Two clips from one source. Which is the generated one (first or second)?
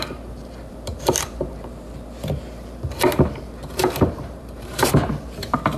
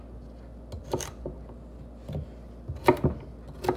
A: first